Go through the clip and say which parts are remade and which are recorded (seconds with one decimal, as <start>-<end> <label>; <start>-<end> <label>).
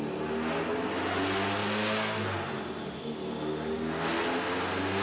0.0-5.0 recorded